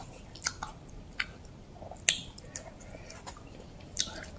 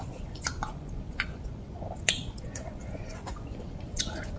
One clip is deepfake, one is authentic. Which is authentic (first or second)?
first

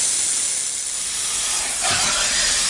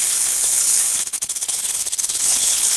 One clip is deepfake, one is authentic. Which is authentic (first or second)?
first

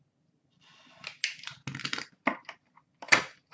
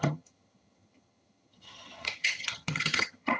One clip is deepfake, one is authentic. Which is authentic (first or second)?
first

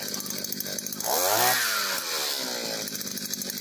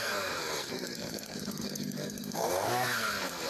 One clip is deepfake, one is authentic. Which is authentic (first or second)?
first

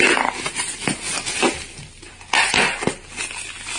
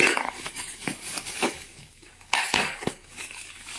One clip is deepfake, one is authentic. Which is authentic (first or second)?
first